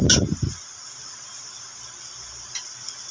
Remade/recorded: recorded